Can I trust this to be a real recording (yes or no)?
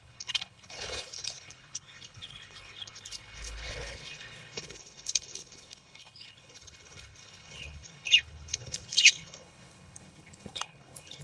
no